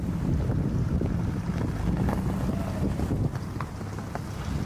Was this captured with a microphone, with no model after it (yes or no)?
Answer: yes